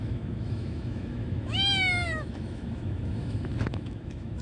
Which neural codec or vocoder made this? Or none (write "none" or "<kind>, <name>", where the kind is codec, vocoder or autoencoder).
autoencoder, DAC-VAE